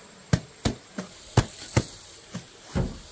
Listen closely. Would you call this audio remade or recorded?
recorded